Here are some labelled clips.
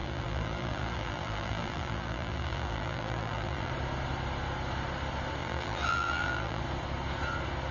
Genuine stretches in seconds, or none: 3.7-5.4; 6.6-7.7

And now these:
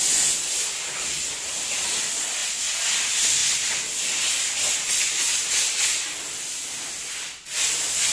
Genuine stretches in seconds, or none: 0.0-8.1